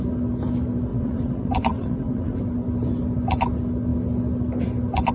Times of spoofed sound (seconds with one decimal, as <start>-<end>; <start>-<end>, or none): 0.9-2.4